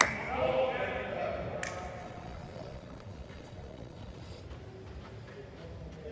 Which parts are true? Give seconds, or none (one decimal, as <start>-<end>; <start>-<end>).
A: 0.0-2.0; 4.4-6.1